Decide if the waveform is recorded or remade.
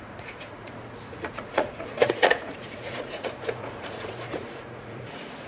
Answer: remade